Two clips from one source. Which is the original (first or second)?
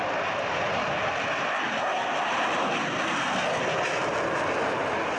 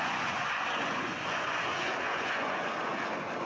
first